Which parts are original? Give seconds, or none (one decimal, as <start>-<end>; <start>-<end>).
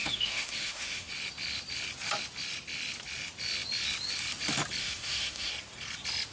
1.1-4.8; 5.5-6.3